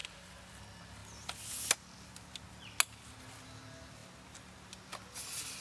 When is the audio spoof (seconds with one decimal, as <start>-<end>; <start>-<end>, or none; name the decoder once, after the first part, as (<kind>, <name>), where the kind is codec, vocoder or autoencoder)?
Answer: none